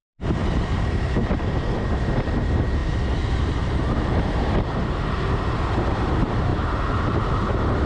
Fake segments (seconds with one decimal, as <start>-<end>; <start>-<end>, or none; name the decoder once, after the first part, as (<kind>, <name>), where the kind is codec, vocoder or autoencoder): 0.0-2.8 (vocoder, BigVGAN v2); 3.4-7.9